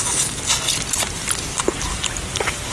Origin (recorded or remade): recorded